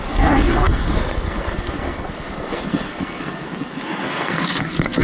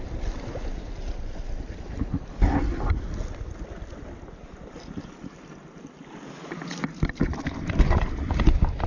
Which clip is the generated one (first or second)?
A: first